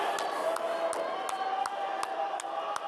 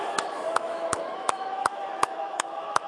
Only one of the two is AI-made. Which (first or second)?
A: second